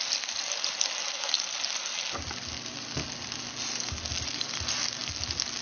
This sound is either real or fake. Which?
real